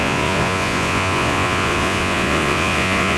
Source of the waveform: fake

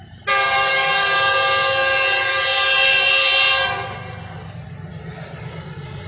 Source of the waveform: real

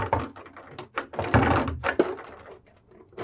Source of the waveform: real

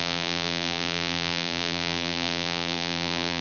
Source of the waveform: fake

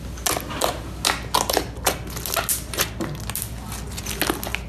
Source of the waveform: real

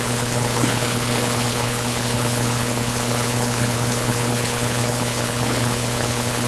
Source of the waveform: fake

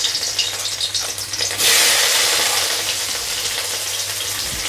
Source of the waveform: real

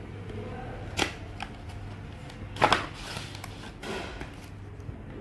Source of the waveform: real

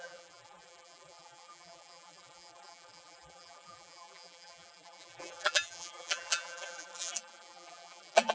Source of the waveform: fake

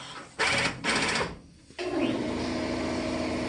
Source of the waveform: real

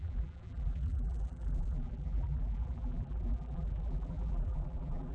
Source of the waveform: fake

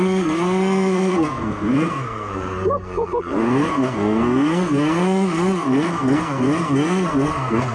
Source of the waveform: fake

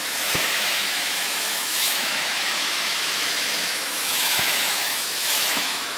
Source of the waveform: fake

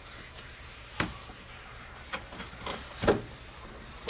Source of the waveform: fake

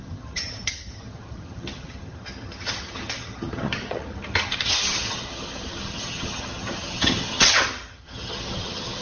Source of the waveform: fake